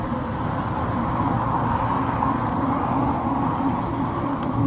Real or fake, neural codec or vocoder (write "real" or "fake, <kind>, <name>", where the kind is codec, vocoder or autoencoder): real